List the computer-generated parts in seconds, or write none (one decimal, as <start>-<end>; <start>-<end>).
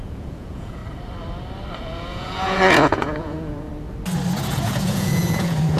0.0-0.8; 1.8-3.7; 4.4-5.8